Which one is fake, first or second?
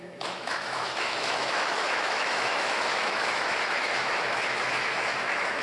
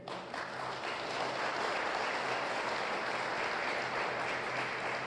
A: first